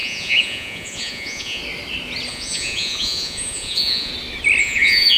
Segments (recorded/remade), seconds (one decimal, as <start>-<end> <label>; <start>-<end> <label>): 0.0-1.6 remade; 1.6-2.3 recorded; 2.3-4.1 remade; 4.1-4.6 recorded; 4.6-5.2 remade